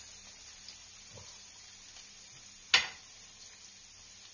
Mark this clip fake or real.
real